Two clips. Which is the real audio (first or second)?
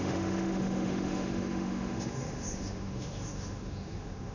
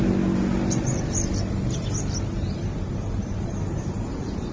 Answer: second